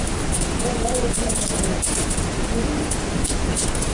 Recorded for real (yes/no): yes